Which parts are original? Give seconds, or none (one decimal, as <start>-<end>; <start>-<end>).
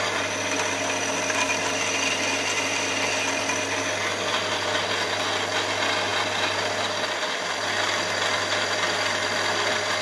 0.0-10.0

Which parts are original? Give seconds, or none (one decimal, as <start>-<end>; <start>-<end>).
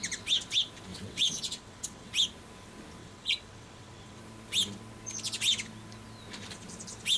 0.0-0.9; 2.1-3.0; 4.2-7.2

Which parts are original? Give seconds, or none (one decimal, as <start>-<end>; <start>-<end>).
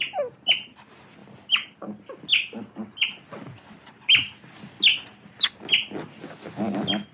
0.0-7.1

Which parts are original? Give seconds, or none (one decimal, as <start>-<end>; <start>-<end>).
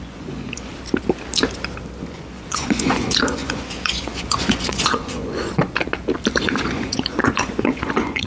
0.7-2.0; 5.6-6.3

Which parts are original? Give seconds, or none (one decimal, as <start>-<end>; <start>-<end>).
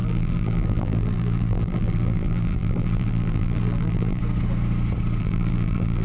4.2-5.2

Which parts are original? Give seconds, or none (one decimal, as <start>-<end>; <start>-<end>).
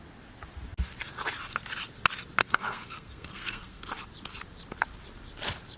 0.0-2.4; 3.8-5.8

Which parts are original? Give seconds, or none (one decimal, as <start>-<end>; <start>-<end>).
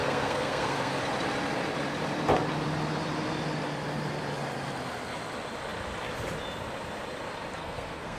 1.0-7.6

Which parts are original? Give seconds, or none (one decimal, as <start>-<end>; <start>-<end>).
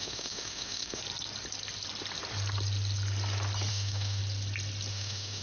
1.0-3.7; 4.2-4.9